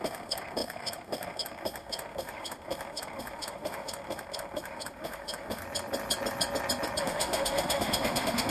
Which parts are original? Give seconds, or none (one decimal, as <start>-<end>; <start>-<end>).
5.6-7.0